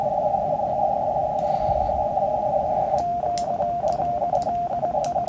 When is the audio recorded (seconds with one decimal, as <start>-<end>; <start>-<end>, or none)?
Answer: 0.0-5.3